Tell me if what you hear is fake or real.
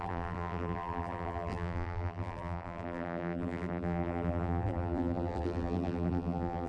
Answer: fake